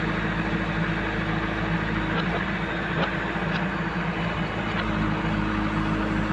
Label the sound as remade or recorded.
recorded